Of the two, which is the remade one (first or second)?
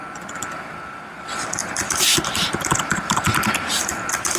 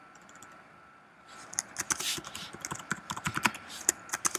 first